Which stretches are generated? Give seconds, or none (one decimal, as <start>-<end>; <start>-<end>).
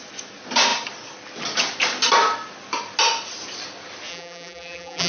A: 4.1-5.1